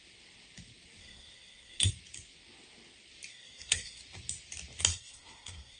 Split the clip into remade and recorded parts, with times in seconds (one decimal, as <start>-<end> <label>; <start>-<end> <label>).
0.0-1.0 recorded; 1.0-1.9 remade; 1.9-3.3 recorded; 3.3-4.0 remade; 4.0-4.9 recorded; 4.9-5.8 remade